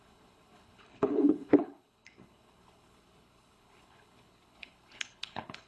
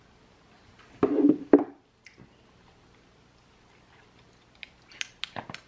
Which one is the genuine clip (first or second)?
second